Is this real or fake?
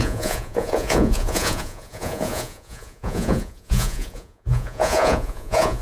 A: fake